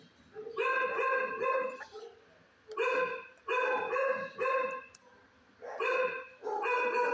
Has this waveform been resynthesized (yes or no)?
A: no